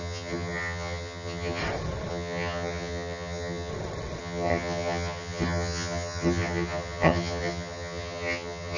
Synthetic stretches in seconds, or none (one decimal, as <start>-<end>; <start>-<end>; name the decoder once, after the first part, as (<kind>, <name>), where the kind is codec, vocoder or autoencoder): 0.0-1.6 (vocoder, HiFi-GAN); 2.1-3.7; 4.2-8.8